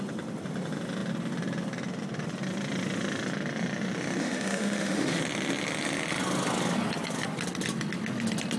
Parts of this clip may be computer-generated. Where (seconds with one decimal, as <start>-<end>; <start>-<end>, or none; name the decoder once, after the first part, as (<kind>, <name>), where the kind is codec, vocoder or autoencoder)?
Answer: 4.2-5.2 (autoencoder, DAC-VAE)